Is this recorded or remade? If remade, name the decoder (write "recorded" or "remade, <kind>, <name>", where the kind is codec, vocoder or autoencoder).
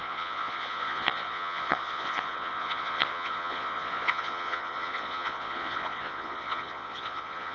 remade, vocoder, Vocos